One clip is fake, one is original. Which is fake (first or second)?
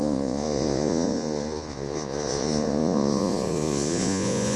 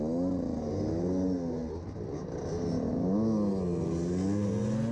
first